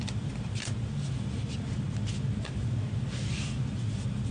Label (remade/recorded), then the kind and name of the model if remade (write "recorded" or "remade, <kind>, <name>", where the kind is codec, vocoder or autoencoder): recorded